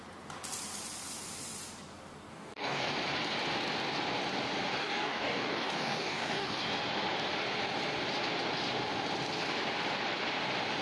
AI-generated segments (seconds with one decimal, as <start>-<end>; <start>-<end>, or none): 2.3-2.9; 4.8-6.6